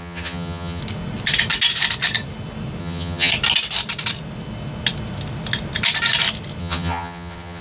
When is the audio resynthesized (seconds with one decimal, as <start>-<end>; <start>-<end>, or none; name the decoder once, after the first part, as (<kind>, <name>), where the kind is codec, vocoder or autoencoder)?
0.0-0.8 (vocoder, HiFi-GAN); 2.8-3.3; 6.6-7.6